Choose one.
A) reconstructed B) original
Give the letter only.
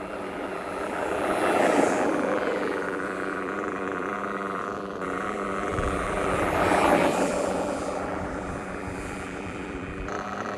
A